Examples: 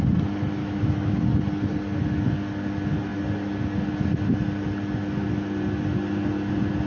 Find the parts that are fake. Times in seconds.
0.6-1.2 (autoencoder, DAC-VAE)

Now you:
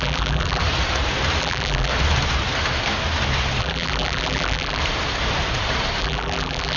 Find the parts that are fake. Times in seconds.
0.0-0.6 (vocoder, BigVGAN v2); 1.4-1.9; 3.6-4.8; 6.0-6.8